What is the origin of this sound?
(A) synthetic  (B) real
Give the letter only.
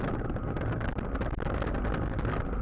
B